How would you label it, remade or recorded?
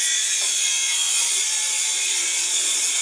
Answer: remade